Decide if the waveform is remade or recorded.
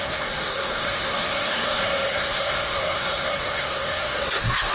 remade